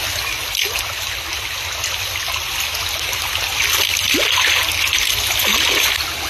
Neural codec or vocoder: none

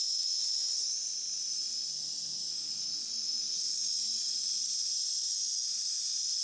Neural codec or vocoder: none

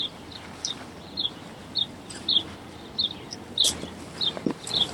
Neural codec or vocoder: vocoder, BigVGAN v2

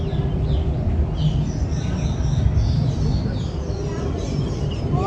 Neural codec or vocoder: none